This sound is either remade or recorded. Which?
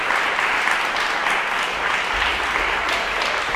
recorded